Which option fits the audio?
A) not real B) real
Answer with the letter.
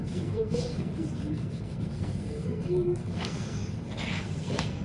A